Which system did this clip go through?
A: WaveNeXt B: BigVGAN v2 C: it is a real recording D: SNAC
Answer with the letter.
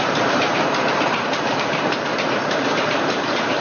B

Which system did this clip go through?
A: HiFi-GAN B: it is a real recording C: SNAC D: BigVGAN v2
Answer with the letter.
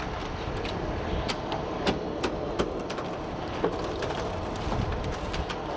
B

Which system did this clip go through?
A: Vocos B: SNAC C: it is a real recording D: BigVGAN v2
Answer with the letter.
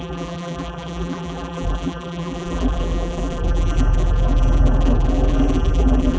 D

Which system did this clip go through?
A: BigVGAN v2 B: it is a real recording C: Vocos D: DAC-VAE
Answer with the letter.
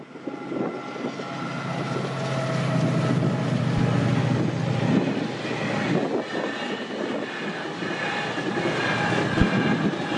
B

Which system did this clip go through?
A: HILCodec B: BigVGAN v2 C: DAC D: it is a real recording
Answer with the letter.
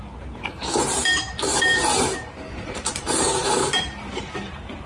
B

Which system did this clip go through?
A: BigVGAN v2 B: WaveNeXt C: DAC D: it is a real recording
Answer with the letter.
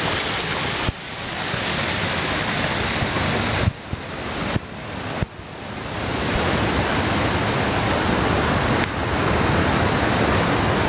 D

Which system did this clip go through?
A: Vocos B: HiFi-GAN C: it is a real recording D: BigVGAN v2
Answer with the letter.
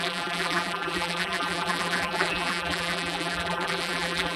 D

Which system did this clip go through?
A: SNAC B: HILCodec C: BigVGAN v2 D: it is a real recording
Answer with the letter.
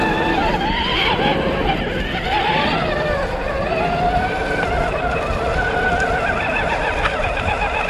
D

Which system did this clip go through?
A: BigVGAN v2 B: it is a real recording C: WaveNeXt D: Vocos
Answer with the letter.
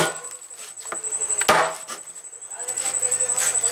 B